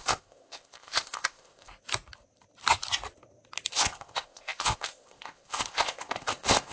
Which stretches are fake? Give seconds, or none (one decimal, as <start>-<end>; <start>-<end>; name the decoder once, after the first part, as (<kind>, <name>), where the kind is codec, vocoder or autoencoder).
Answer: 0.0-1.7 (codec, ZipCodec); 3.7-6.7